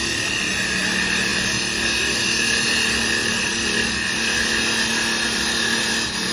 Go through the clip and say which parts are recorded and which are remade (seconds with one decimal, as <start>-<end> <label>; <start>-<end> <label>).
0.0-6.3 recorded